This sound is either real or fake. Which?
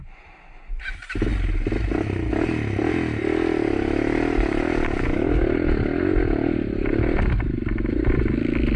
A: real